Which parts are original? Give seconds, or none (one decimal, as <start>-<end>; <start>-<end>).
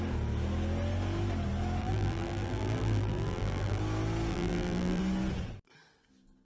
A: 0.0-1.8; 3.8-4.3; 5.0-6.4